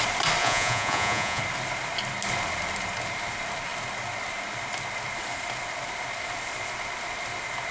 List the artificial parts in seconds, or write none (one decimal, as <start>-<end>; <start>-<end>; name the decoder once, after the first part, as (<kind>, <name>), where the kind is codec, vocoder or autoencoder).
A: 0.4-1.4 (vocoder, Vocos)